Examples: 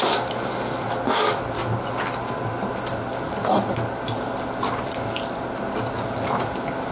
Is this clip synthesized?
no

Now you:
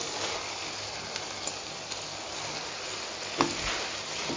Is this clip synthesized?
no